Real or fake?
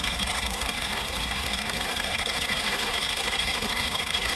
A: fake